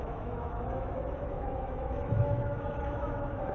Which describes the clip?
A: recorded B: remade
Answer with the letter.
B